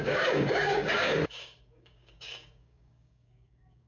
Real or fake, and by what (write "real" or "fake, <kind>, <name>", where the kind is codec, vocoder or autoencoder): fake, codec, DAC